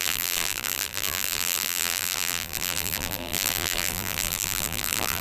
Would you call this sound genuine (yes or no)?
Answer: no